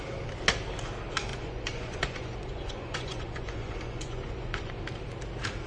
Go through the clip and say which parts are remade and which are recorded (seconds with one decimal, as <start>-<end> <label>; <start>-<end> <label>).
0.0-1.3 recorded; 1.3-4.7 remade; 4.7-5.7 recorded